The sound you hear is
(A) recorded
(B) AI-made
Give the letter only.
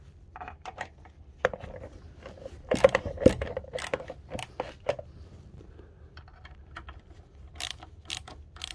A